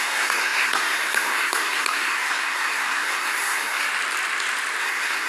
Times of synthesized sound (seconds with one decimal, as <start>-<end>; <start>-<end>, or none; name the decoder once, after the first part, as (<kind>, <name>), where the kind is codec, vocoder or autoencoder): 0.0-3.9 (codec, SNAC); 4.8-5.3

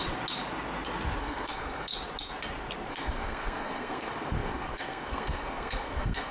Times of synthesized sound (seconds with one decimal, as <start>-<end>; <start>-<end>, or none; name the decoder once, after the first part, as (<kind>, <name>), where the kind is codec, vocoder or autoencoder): 1.2-1.9 (codec, SNAC); 2.9-6.3

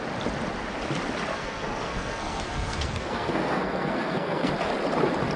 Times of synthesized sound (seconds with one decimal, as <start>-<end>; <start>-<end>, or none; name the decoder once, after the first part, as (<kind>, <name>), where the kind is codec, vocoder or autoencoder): 1.3-4.5 (codec, SNAC)

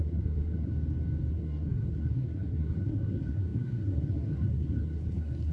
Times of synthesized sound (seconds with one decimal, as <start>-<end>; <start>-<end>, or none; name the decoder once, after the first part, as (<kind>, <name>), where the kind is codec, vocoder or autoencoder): 0.0-0.7 (codec, SNAC); 1.3-5.5

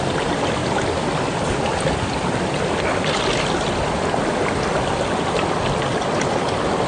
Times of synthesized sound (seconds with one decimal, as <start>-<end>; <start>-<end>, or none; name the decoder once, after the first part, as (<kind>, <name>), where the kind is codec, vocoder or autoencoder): none

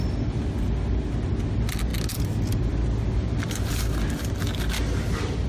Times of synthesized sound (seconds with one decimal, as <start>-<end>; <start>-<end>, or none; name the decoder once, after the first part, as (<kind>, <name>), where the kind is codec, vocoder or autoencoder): none

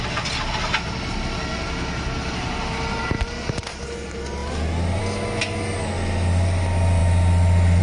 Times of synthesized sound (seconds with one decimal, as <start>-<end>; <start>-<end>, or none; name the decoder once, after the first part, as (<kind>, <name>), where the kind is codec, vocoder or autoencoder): none

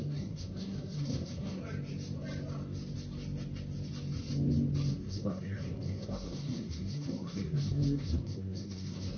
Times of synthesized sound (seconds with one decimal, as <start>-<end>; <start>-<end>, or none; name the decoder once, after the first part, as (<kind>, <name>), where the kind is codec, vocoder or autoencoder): 0.0-1.6 (codec, SNAC); 4.9-9.2